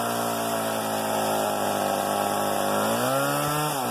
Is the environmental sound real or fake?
real